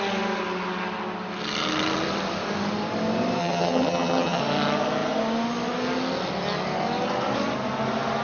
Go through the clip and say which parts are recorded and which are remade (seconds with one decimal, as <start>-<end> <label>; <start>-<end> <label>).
0.0-3.4 recorded; 3.4-4.4 remade; 4.4-8.2 recorded